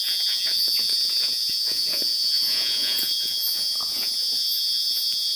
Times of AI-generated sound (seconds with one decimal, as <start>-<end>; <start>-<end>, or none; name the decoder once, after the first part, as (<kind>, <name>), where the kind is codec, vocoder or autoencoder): 0.0-5.4 (vocoder, Vocos)